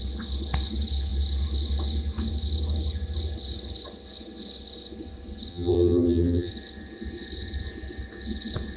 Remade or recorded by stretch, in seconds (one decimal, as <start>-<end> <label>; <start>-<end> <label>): 0.0-5.5 recorded; 5.5-6.5 remade; 6.5-8.8 recorded